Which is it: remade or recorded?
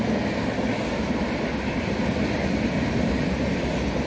recorded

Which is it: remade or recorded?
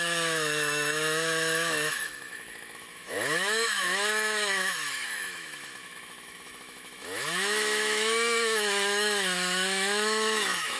remade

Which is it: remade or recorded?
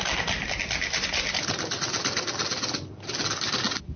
recorded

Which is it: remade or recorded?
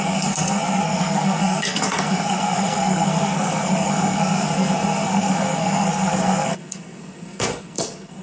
remade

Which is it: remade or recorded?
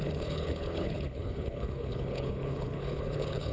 remade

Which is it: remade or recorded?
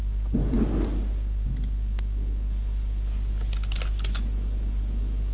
recorded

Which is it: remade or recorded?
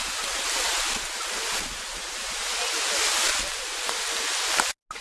recorded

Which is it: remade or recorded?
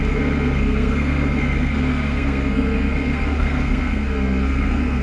remade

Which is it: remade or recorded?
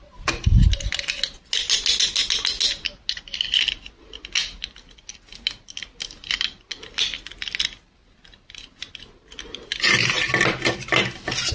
recorded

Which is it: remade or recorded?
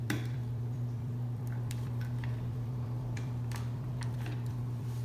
remade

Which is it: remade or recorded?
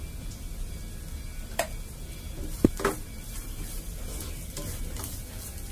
recorded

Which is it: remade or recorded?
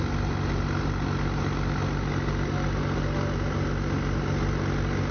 recorded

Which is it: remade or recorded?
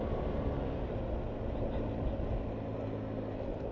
recorded